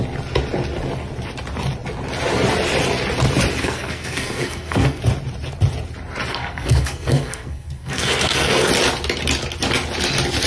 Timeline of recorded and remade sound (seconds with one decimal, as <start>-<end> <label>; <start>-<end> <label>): 0.0-3.6 recorded; 3.6-5.0 remade; 5.0-6.3 recorded; 6.3-8.7 remade; 8.7-10.5 recorded